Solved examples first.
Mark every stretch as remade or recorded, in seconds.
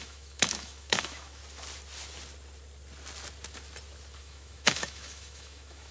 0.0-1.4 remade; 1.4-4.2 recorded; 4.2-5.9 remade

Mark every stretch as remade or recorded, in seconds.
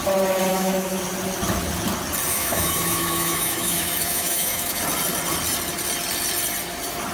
0.0-0.5 recorded; 0.5-1.0 remade; 1.0-2.3 recorded; 2.3-4.8 remade; 4.8-7.1 recorded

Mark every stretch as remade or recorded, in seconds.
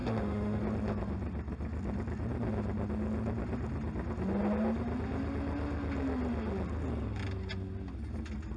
0.0-0.6 remade; 0.6-8.6 recorded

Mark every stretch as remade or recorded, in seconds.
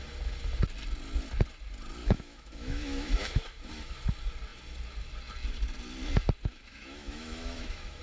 0.0-2.0 recorded; 2.0-3.7 remade; 3.7-6.5 recorded; 6.5-8.0 remade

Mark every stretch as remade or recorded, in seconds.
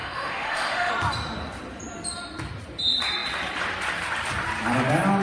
0.0-0.9 remade; 0.9-5.2 recorded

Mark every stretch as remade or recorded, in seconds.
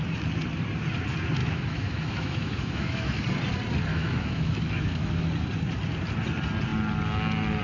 0.0-1.4 recorded; 1.4-3.2 remade; 3.2-3.9 recorded; 3.9-5.3 remade; 5.3-7.6 recorded